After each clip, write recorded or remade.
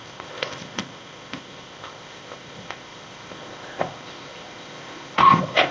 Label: remade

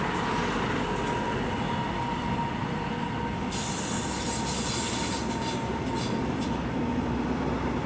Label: recorded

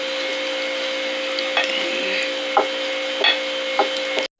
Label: recorded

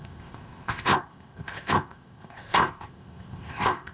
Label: remade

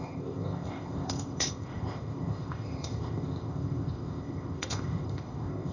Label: remade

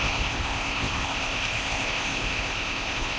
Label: remade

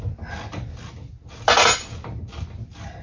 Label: recorded